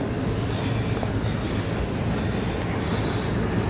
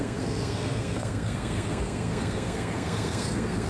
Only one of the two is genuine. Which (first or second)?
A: first